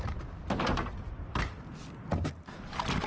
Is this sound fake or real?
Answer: real